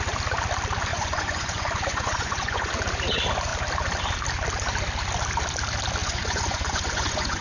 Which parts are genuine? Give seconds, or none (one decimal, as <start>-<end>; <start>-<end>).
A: 0.0-0.9; 2.7-6.0

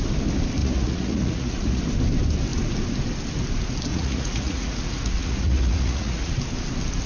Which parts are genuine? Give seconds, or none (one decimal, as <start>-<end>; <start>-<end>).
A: 0.0-0.6; 1.8-3.9; 6.3-7.1

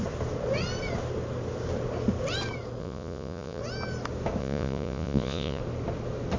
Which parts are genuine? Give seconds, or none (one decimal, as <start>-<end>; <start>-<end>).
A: 0.0-2.8; 3.6-4.4; 5.6-6.4

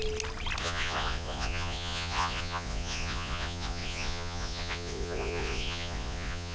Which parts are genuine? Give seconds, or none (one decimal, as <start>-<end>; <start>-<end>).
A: 0.0-0.6